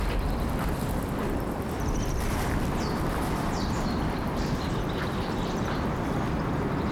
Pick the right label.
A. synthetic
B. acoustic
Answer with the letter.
A